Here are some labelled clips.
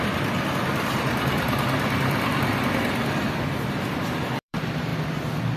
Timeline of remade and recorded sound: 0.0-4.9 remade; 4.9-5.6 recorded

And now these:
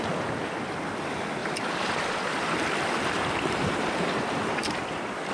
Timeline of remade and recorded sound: 0.0-1.4 recorded; 1.4-4.6 remade; 4.6-5.3 recorded

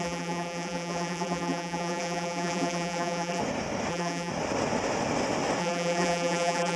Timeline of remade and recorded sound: 0.0-3.4 remade; 3.4-3.9 recorded; 3.9-4.3 remade; 4.3-5.6 recorded; 5.6-6.8 remade

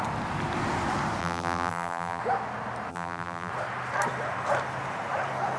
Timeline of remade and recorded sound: 0.0-1.2 recorded; 1.2-2.2 remade; 2.2-2.9 recorded; 2.9-3.5 remade; 3.5-5.6 recorded

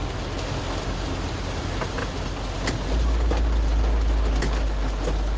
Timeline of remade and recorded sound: 0.0-5.4 recorded

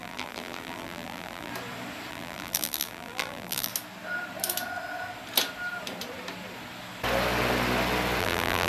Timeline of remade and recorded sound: 0.0-1.5 remade; 1.5-2.1 recorded; 2.1-3.7 remade; 3.7-8.2 recorded; 8.2-8.7 remade

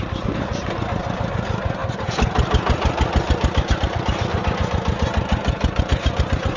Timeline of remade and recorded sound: 0.0-6.6 recorded